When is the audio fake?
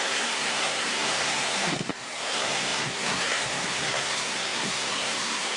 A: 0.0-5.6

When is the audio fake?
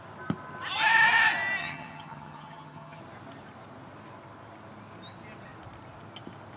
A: 1.6-3.0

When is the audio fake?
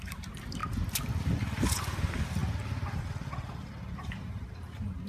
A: 0.0-0.6; 1.6-2.4; 4.0-5.1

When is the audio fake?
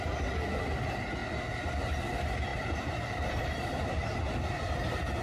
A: 2.5-4.0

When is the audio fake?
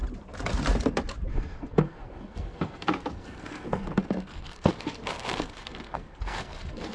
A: 1.3-6.9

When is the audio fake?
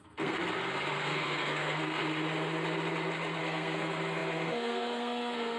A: 0.0-0.4; 0.9-2.0; 3.4-5.6